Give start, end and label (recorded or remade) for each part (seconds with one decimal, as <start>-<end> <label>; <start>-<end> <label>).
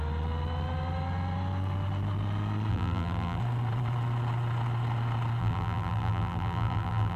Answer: 0.0-2.7 recorded; 2.7-3.4 remade; 3.4-5.4 recorded; 5.4-7.2 remade